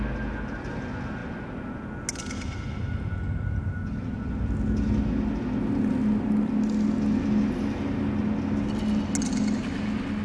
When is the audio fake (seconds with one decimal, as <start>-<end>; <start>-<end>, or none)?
none